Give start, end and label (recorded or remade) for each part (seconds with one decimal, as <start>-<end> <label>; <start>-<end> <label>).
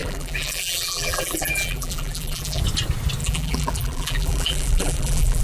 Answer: 0.0-2.6 remade; 2.6-3.2 recorded; 3.2-5.4 remade